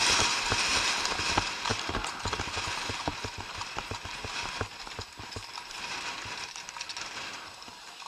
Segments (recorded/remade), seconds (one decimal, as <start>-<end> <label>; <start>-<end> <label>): 0.0-8.1 recorded